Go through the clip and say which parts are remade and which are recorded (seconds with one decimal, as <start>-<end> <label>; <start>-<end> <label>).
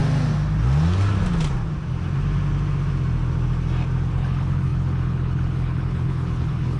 0.0-4.1 recorded; 4.1-6.8 remade